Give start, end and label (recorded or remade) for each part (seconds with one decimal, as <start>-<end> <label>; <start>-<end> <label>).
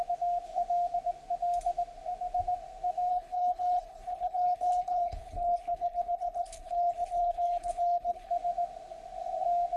0.0-3.1 recorded; 3.1-8.3 remade; 8.3-9.8 recorded